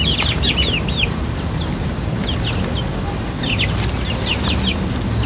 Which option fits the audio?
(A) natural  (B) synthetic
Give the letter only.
A